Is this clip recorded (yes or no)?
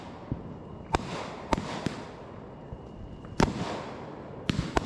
yes